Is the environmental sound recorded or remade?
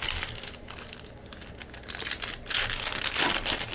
recorded